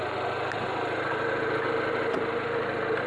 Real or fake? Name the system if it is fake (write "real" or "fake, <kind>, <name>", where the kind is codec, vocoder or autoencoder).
real